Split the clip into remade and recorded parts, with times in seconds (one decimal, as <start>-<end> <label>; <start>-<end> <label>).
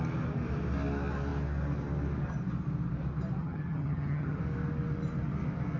0.0-3.4 recorded; 3.4-4.4 remade; 4.4-5.8 recorded